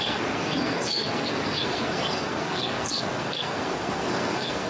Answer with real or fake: fake